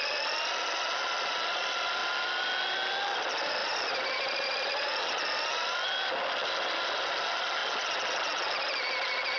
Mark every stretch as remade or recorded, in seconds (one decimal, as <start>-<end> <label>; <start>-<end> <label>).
0.0-3.6 recorded; 3.6-4.9 remade; 4.9-9.4 recorded